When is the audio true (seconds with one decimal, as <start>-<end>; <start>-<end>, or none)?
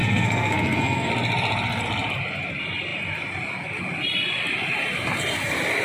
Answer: 1.1-5.8